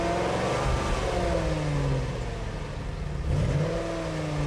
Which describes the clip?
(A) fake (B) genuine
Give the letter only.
B